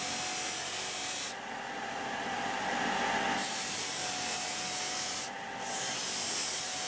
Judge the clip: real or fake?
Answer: real